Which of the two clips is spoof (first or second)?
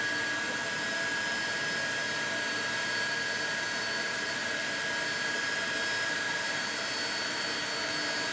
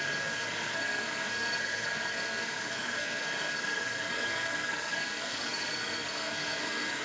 second